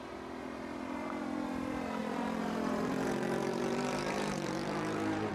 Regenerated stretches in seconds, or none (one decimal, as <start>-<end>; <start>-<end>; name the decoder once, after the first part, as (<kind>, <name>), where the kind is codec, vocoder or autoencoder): 2.0-5.3 (vocoder, BigVGAN v2)